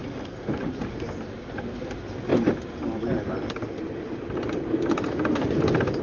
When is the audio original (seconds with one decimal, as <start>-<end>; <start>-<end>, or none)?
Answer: 0.0-6.0